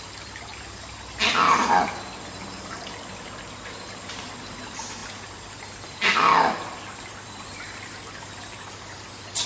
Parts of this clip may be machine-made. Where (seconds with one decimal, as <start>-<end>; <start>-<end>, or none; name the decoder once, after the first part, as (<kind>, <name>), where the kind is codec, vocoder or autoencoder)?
none

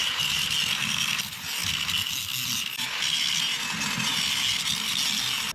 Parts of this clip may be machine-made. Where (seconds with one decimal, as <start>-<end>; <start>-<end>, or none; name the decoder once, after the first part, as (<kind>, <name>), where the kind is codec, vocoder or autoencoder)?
0.0-0.5 (vocoder, BigVGAN v2)

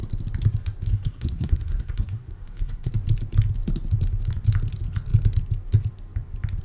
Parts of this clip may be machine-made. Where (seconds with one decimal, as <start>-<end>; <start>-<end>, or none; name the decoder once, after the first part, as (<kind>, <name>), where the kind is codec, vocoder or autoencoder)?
0.9-2.9 (codec, SNAC)

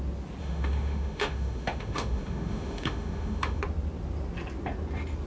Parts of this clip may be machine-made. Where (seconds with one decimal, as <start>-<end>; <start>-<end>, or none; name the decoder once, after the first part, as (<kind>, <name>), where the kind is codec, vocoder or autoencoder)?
0.4-3.6 (autoencoder, DAC-VAE)

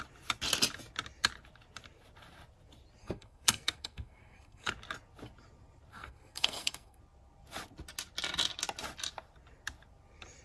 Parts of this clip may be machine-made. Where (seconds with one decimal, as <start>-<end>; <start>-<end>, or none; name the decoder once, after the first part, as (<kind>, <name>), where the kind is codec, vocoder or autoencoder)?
3.0-4.7 (codec, SNAC); 5.9-7.0

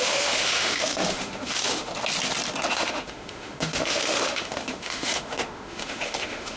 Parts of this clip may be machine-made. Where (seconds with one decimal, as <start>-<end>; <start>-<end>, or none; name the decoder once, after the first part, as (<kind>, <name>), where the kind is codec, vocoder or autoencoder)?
0.0-1.9 (autoencoder, DAC-VAE); 2.7-6.6